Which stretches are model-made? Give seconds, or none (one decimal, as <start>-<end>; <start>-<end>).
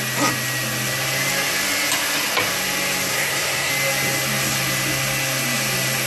3.1-3.7